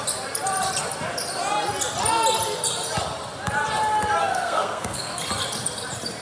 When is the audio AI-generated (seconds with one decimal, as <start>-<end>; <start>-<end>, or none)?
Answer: 4.2-5.2